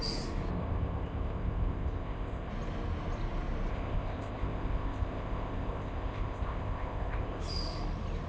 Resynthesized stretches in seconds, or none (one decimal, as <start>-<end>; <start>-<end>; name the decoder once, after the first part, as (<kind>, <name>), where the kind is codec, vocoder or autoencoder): 0.5-2.5 (codec, ZipCodec); 3.7-7.4